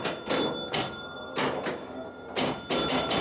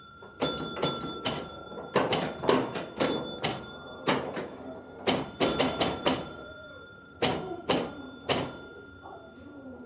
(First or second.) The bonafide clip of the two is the first